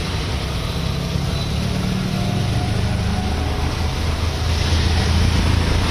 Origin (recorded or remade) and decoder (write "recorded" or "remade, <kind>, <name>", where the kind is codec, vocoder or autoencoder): recorded